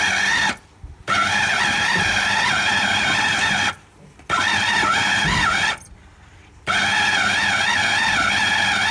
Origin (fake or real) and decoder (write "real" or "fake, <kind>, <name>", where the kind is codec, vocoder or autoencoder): real